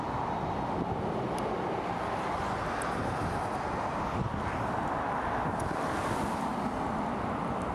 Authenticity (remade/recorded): recorded